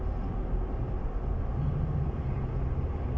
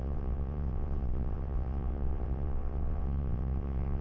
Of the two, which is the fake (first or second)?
second